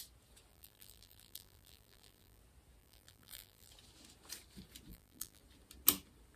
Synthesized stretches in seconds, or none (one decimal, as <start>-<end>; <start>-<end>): 0.5-2.4; 2.8-3.7; 4.9-5.4